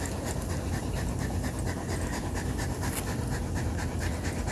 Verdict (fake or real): real